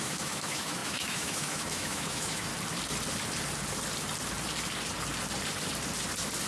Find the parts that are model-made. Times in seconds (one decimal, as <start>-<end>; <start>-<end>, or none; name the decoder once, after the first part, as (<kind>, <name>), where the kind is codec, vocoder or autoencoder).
0.0-2.5 (autoencoder, DAC-VAE)